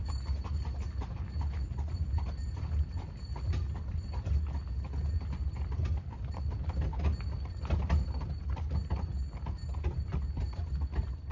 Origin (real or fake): real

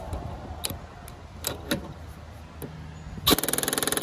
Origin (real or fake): real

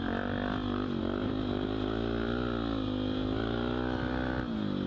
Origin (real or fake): real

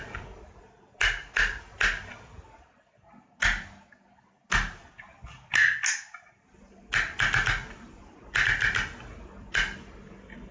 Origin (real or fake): real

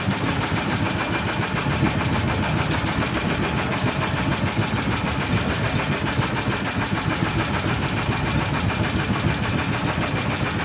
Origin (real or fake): real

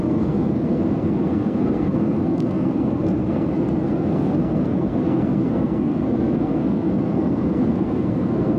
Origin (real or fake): fake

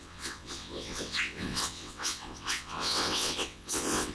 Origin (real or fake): fake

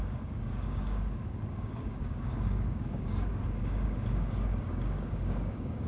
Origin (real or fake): fake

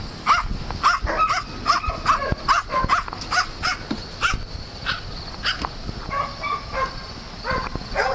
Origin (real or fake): real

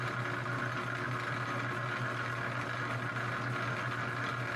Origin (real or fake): real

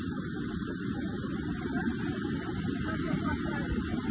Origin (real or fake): fake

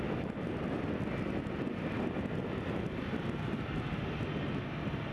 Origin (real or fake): real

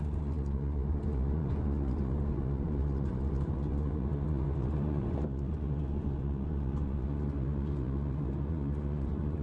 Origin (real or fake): fake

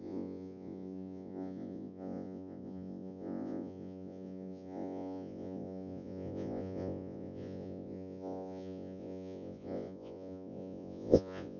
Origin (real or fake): fake